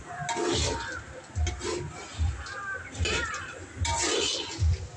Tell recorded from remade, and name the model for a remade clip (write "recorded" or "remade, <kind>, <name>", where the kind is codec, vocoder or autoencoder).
recorded